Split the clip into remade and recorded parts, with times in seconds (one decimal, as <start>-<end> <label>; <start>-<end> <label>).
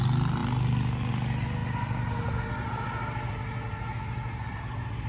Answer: 0.0-5.1 recorded